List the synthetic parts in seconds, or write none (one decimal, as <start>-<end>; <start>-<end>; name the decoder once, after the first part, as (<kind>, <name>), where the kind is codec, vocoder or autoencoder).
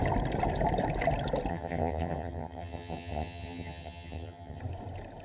1.5-4.6 (vocoder, HiFi-GAN)